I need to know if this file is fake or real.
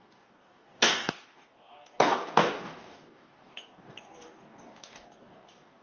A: fake